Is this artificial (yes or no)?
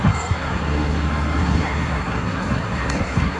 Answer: yes